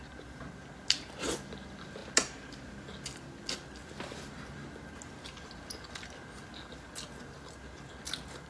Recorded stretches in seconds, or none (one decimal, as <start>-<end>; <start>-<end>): 0.0-8.5